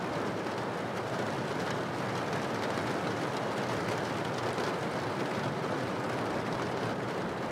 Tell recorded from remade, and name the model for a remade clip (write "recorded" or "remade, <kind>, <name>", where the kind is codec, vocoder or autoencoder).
recorded